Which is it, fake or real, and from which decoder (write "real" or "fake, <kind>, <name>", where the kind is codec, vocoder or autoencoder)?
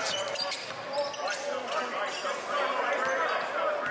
real